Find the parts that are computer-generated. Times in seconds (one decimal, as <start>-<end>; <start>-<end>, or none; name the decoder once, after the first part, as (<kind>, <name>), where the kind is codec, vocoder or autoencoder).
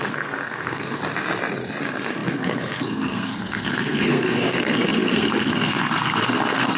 0.0-1.0 (codec, SNAC); 1.8-6.8